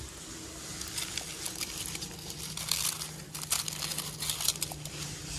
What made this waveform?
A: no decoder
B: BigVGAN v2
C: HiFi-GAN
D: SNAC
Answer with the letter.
A